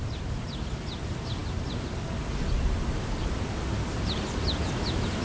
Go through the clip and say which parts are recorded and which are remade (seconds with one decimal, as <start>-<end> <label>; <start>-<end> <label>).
0.0-5.2 recorded